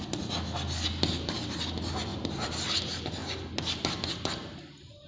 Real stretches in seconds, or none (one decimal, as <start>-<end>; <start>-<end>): 0.0-2.1; 2.8-5.1